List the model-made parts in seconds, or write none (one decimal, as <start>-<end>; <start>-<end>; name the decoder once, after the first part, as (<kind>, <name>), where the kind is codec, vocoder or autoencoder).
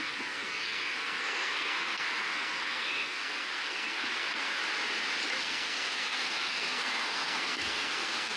0.0-4.6 (codec, SNAC); 5.4-8.4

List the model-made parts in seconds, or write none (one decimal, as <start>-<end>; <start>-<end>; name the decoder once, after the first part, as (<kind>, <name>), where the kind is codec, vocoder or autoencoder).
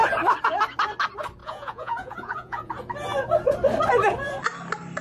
1.4-2.7 (vocoder, Vocos)